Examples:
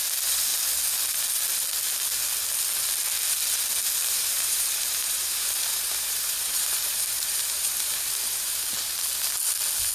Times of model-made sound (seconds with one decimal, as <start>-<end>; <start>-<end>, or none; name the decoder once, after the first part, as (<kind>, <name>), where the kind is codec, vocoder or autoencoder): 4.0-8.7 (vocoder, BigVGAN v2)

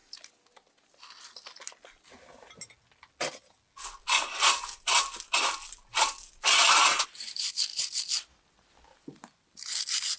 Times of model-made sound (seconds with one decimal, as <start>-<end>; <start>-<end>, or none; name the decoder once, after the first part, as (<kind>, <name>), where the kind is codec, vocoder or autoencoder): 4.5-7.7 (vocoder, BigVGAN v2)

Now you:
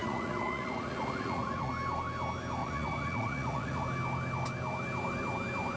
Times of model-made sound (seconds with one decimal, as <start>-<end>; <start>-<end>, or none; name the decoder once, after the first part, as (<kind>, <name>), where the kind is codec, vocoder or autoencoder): 0.0-1.7 (vocoder, Vocos); 2.6-3.8

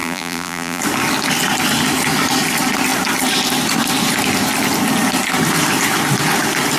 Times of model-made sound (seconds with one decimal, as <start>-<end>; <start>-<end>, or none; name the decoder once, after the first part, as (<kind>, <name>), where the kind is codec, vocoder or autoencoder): 0.0-0.8 (vocoder, BigVGAN v2)

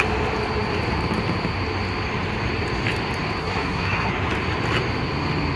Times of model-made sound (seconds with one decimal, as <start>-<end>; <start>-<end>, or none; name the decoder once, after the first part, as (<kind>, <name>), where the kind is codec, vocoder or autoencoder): 3.4-4.1 (codec, SNAC)